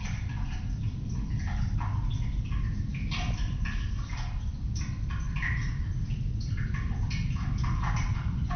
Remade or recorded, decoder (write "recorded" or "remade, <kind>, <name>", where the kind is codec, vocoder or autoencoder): recorded